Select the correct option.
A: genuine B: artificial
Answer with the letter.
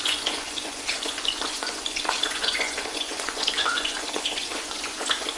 B